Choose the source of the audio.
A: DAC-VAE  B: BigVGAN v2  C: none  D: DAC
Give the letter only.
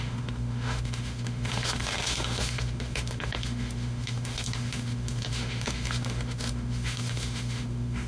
A